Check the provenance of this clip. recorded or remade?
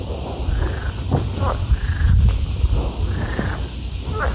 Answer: recorded